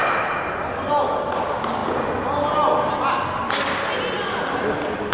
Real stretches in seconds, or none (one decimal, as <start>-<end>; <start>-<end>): 0.0-5.1